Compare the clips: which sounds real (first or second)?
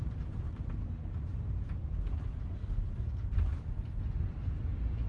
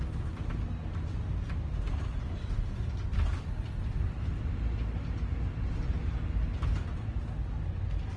second